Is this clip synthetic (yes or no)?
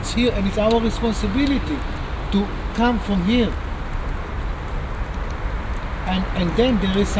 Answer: no